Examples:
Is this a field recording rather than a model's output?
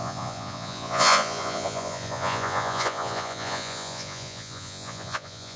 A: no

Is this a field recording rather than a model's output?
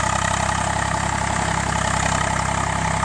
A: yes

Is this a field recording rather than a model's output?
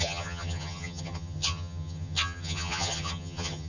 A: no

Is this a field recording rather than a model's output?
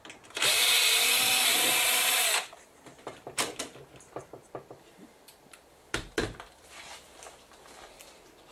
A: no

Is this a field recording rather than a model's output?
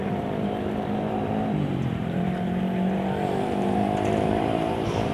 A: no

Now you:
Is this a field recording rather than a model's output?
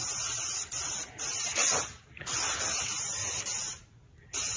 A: yes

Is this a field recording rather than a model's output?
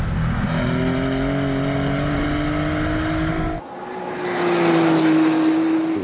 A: yes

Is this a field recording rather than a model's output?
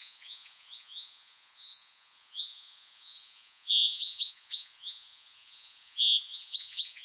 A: no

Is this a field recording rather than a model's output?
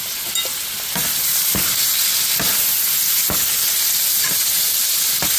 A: yes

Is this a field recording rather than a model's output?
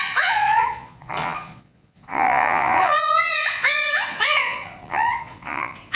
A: no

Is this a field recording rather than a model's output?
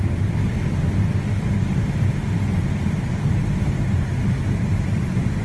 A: yes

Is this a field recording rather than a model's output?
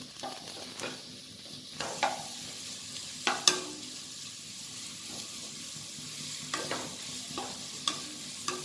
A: yes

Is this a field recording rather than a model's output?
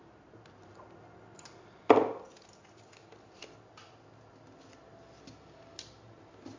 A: yes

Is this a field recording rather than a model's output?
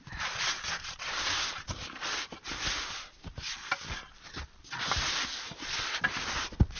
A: yes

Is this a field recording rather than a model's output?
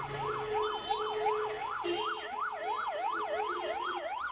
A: yes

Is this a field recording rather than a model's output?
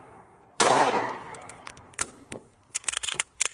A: no